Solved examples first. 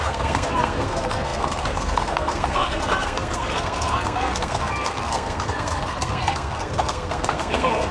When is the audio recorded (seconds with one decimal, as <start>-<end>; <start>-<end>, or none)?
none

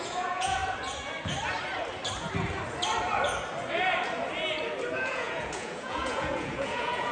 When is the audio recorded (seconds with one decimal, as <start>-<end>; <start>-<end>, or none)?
0.6-4.9

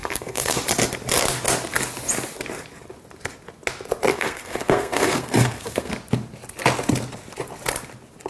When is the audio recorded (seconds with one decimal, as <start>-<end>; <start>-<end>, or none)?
0.6-4.1; 5.9-8.3

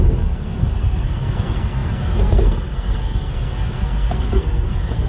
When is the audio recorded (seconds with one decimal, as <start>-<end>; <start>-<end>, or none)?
none

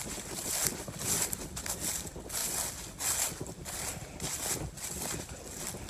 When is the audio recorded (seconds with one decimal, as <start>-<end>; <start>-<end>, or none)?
0.0-5.9